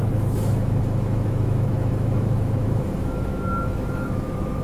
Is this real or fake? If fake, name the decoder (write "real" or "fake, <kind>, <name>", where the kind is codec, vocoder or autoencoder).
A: fake, autoencoder, DAC-VAE